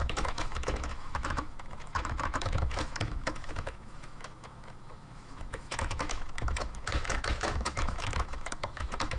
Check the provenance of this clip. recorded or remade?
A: remade